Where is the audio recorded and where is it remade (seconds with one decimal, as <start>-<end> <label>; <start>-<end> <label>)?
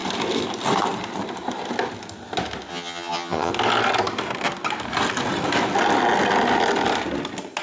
0.0-2.7 recorded; 2.7-3.5 remade; 3.5-7.6 recorded